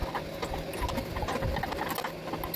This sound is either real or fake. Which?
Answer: real